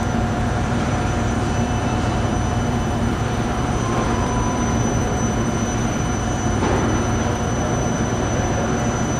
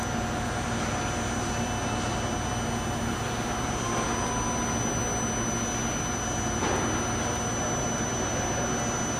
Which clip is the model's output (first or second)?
first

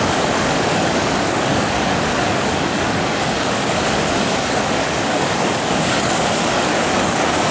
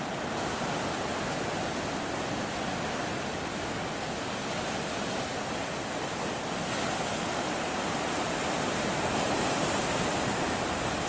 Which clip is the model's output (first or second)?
first